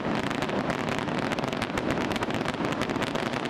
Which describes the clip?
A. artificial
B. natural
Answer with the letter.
B